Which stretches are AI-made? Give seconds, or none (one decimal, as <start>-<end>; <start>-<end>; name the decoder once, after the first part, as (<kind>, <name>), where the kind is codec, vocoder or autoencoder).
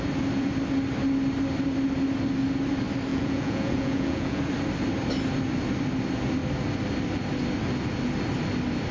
3.1-4.4 (vocoder, Vocos)